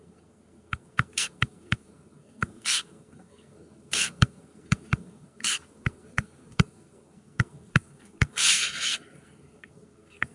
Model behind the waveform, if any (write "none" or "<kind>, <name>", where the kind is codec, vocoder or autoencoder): codec, SNAC